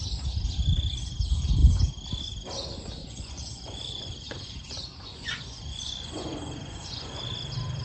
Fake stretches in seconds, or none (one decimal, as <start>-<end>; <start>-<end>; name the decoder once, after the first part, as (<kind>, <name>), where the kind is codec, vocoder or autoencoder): 3.0-7.2 (vocoder, Vocos)